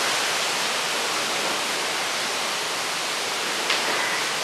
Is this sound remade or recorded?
recorded